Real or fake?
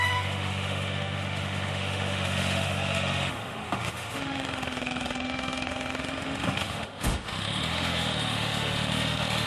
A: fake